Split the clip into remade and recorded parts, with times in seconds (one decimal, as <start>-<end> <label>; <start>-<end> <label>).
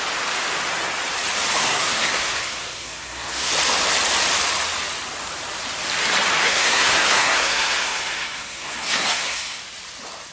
0.0-1.6 recorded; 1.6-3.5 remade; 3.5-6.4 recorded; 6.4-9.6 remade; 9.6-10.3 recorded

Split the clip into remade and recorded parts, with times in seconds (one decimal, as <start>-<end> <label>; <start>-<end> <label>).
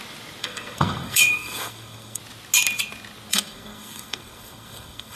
0.0-0.4 recorded; 0.4-2.2 remade; 2.2-3.3 recorded; 3.3-5.2 remade